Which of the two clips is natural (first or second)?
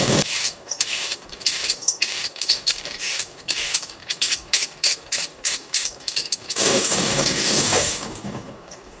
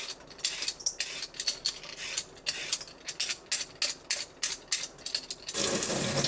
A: second